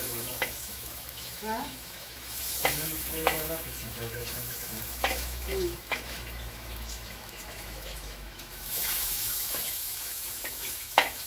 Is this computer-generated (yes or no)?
yes